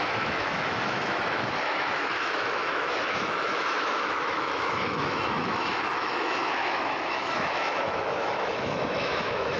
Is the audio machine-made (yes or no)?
yes